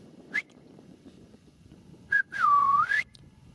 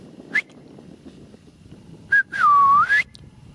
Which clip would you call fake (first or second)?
first